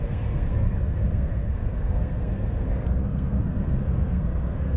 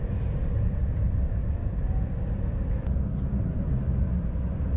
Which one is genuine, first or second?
second